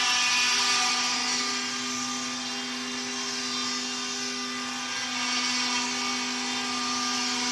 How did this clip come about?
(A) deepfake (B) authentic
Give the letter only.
B